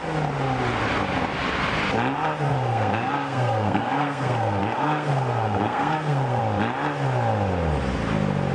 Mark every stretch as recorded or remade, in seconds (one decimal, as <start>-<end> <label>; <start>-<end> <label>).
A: 0.0-2.5 recorded; 2.5-6.4 remade; 6.4-8.5 recorded